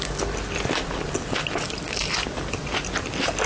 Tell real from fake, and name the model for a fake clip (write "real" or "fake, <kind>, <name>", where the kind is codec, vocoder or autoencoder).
real